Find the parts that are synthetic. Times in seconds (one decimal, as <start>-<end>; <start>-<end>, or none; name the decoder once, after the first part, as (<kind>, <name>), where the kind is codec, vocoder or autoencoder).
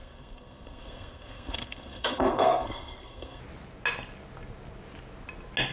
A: 0.0-3.4 (codec, SNAC)